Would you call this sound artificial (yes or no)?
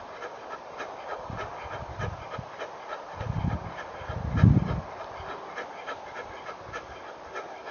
no